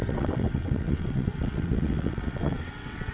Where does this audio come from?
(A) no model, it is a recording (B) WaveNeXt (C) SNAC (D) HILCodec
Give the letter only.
B